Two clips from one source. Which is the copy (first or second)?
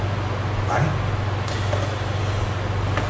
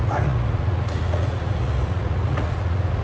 second